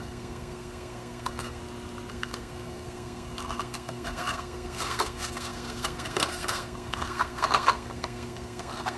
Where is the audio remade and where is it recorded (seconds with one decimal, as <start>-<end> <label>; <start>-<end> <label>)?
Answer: 0.0-1.6 remade; 1.6-2.1 recorded; 2.1-9.0 remade